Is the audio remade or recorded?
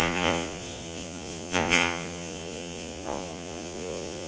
remade